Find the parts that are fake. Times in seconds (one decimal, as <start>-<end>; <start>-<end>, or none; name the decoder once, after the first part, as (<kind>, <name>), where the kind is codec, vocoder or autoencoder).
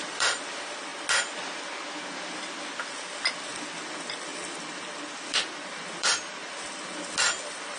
0.0-0.9 (vocoder, BigVGAN v2); 3.7-7.8